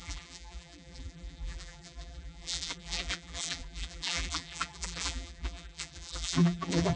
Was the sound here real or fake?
fake